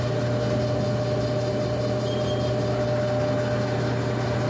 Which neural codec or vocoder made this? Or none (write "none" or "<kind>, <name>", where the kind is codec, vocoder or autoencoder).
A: none